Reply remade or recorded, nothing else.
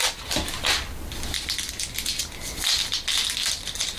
recorded